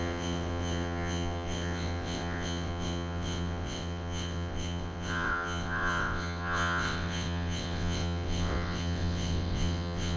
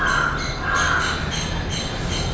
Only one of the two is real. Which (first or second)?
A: second